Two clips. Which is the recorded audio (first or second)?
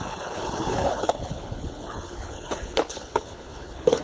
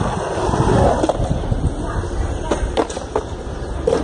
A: second